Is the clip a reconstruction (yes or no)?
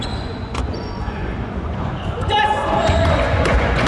yes